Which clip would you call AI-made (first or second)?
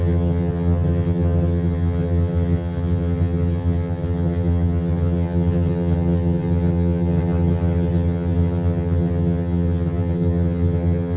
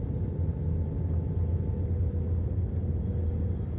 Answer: first